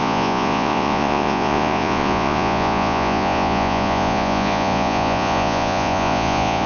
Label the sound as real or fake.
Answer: fake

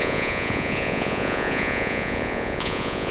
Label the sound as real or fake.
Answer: fake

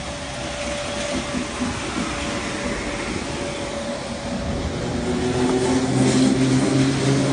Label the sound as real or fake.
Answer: real